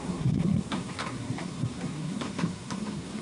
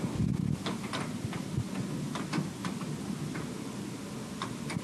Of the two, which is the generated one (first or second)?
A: first